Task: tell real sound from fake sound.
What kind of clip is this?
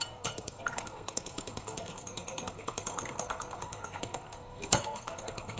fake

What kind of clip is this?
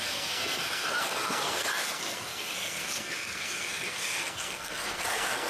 fake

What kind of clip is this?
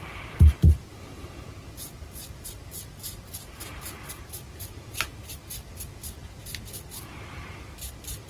real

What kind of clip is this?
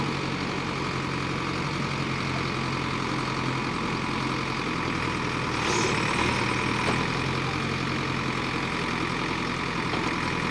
real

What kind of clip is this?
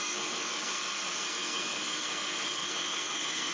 fake